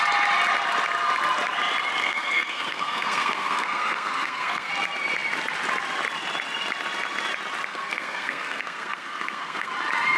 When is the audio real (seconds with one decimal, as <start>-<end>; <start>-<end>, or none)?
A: 0.0-2.0; 4.7-7.7; 9.7-10.2